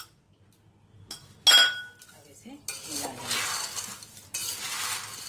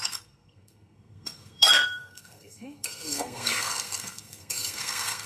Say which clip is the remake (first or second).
second